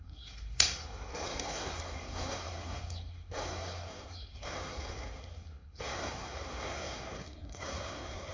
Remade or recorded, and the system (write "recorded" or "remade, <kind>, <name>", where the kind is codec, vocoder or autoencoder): remade, codec, SNAC